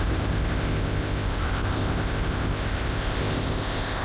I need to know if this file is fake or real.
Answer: fake